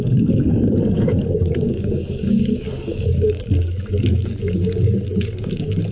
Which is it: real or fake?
fake